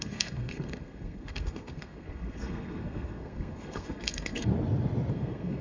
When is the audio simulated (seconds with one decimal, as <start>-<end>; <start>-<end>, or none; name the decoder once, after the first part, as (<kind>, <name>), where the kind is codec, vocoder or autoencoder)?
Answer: 0.0-4.5 (codec, SNAC); 5.1-5.6